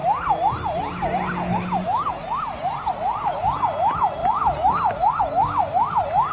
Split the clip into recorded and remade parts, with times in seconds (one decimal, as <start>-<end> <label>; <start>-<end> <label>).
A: 0.0-6.3 recorded